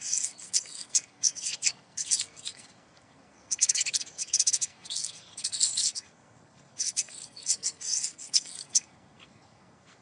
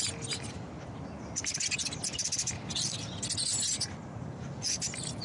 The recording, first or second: second